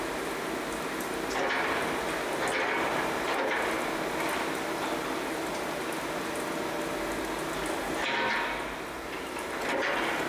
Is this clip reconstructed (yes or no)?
no